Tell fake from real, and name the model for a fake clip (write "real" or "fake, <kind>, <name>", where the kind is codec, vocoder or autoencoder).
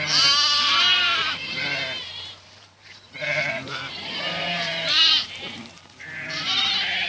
fake, vocoder, BigVGAN v2